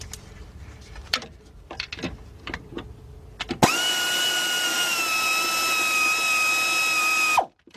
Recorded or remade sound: recorded